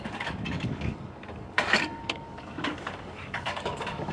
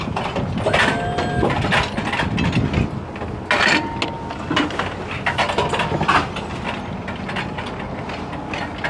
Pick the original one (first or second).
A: second